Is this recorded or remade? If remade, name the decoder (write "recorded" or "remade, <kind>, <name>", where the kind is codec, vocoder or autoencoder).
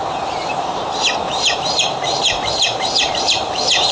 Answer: remade, vocoder, BigVGAN v2